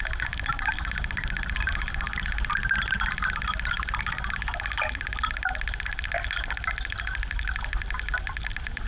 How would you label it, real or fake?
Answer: real